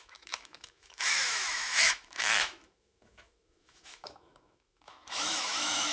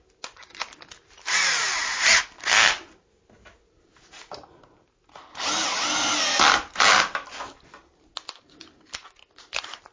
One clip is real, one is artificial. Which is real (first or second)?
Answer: second